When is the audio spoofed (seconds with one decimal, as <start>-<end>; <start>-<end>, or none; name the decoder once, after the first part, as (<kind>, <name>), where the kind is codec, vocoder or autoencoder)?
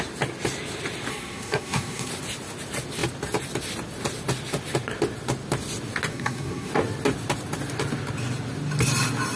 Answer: 1.1-2.1 (codec, SNAC); 6.1-6.7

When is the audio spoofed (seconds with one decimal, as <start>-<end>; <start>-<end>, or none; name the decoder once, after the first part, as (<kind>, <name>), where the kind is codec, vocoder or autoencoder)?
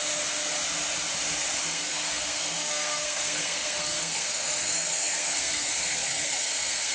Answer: 1.6-6.9 (codec, SNAC)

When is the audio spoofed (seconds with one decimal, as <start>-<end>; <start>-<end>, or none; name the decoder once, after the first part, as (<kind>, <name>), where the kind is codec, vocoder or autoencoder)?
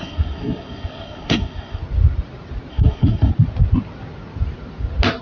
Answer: 0.0-1.8 (codec, SNAC); 2.7-3.3